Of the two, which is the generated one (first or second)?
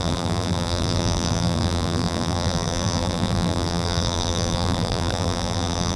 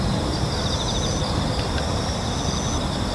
first